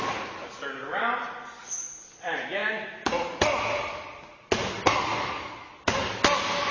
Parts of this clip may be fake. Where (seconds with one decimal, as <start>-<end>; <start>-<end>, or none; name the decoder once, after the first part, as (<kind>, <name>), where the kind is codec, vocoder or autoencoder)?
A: none

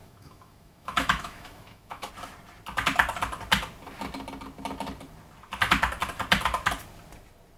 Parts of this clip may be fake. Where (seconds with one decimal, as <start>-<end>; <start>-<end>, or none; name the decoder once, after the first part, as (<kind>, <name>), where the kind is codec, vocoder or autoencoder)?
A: 0.0-2.1 (autoencoder, DAC-VAE)

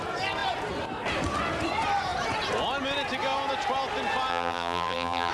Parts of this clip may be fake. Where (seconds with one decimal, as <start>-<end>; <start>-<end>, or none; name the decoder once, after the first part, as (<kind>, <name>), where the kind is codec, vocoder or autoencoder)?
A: 4.3-5.3 (vocoder, BigVGAN v2)

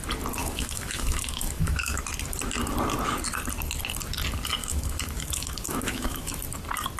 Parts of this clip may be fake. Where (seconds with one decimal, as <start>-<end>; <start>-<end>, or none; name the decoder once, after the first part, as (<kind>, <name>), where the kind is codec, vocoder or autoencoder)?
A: 0.4-2.0 (autoencoder, DAC-VAE); 4.6-6.4